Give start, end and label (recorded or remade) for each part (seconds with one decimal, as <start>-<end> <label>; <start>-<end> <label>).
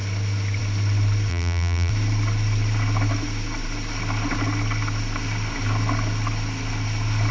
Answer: 0.0-1.3 recorded; 1.3-1.9 remade; 1.9-7.3 recorded